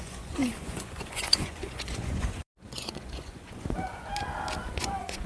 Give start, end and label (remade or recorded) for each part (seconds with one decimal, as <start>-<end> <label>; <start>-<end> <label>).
0.0-4.1 remade; 4.1-4.7 recorded; 4.7-5.3 remade